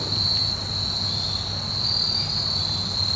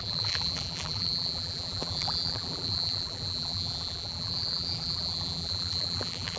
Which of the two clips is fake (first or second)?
second